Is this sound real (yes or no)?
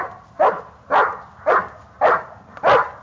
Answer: yes